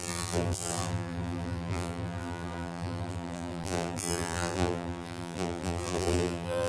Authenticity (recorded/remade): remade